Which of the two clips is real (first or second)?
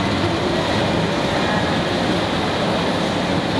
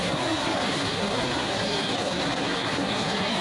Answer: first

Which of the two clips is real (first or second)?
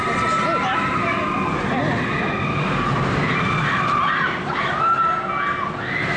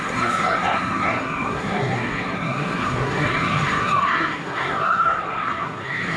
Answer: first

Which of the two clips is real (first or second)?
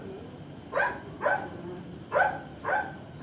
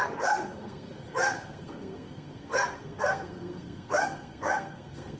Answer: first